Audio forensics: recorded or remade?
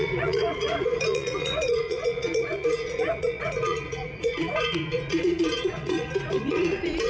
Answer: remade